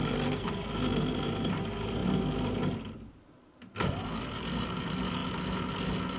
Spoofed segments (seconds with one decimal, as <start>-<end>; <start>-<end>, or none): 0.0-0.5

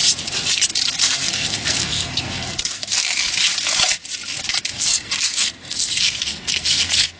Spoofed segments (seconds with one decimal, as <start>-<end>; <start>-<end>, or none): 1.0-3.1; 4.7-7.2

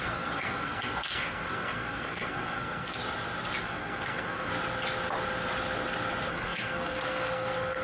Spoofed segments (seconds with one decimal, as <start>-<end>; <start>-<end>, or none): 0.0-3.0; 3.6-4.5; 6.3-7.8

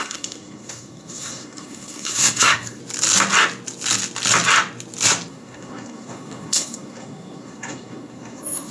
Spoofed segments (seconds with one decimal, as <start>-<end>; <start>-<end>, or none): 0.0-2.8; 5.3-8.7